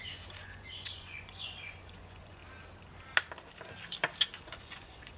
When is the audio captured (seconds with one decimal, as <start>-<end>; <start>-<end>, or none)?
2.4-4.4